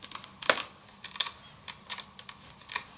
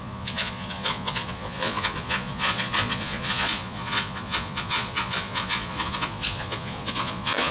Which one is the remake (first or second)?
second